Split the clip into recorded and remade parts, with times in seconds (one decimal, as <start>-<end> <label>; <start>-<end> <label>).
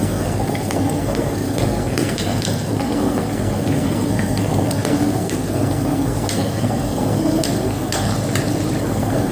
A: 0.0-8.1 remade; 8.1-8.8 recorded; 8.8-9.3 remade